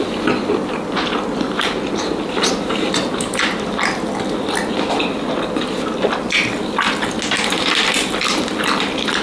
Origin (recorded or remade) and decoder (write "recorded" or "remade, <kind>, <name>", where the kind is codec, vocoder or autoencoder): recorded